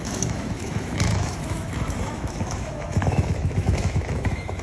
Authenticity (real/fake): fake